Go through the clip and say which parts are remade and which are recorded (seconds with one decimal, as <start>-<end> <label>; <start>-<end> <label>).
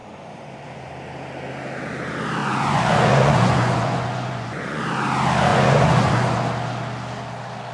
0.0-0.9 remade; 0.9-2.4 recorded; 2.4-4.8 remade; 4.8-5.5 recorded; 5.5-6.4 remade; 6.4-7.7 recorded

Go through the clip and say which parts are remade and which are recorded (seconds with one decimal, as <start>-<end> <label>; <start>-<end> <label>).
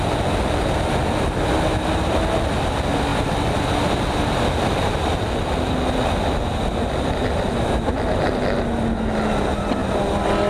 0.0-10.5 recorded